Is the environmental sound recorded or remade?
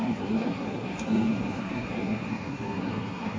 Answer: remade